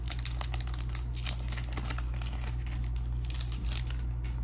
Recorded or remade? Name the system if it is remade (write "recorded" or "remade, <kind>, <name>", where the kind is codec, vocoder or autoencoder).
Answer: recorded